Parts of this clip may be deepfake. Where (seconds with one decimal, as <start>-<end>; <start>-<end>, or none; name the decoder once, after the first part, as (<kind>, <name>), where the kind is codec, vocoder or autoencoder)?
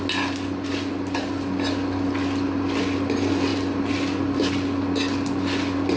none